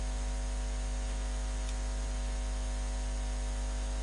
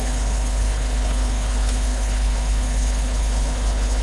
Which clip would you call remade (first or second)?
second